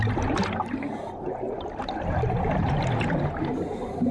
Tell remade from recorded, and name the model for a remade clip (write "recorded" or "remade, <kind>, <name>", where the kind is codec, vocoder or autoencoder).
recorded